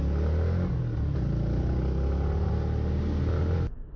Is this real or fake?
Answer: real